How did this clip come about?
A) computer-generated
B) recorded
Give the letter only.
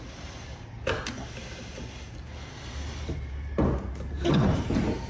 B